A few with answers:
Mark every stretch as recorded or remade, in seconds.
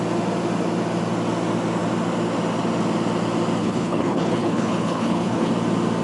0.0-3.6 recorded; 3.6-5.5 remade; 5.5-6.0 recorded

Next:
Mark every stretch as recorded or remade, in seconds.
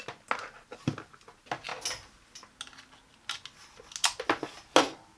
0.0-5.2 recorded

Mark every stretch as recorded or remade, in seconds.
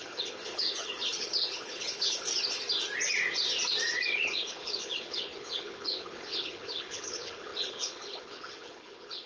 0.0-2.3 remade; 2.3-4.2 recorded; 4.2-9.3 remade